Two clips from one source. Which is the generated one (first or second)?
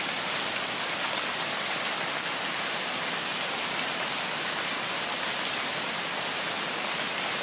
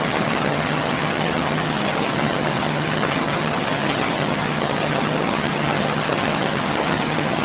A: second